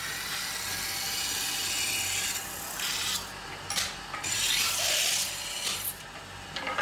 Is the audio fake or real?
real